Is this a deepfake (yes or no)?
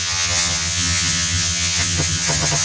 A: yes